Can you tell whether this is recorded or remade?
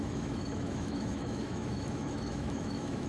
remade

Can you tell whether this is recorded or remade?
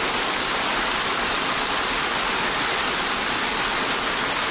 recorded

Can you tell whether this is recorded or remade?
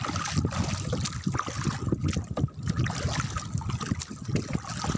recorded